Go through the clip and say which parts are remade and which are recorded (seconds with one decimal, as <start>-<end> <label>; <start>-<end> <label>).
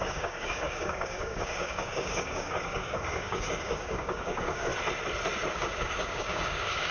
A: 0.0-4.7 remade; 4.7-5.5 recorded; 5.5-6.9 remade